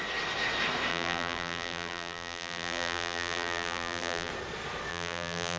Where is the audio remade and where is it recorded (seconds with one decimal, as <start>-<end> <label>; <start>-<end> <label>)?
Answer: 0.0-0.9 recorded; 0.9-4.3 remade; 4.3-4.9 recorded; 4.9-5.6 remade